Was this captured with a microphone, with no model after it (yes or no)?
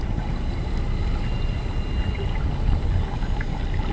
yes